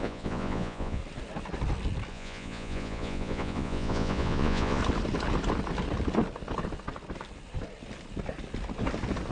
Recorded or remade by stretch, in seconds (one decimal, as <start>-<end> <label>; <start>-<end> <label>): 0.0-1.0 remade; 1.0-2.1 recorded; 2.1-4.8 remade; 4.8-9.3 recorded